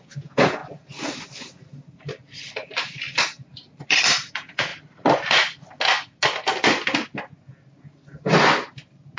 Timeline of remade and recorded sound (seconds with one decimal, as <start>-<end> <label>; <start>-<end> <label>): 0.0-0.6 remade; 0.6-4.3 recorded; 4.3-4.7 remade; 4.7-9.2 recorded